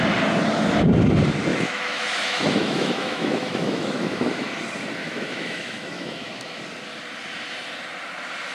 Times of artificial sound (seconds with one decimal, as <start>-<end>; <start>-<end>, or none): 1.5-4.5; 5.0-6.6